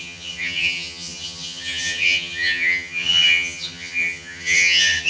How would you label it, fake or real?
fake